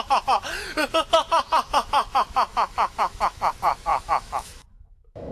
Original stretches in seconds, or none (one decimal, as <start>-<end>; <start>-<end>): 0.0-2.5; 3.4-3.9